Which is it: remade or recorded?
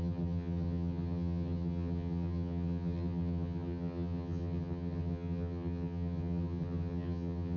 remade